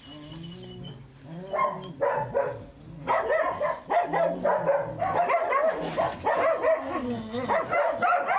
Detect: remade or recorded recorded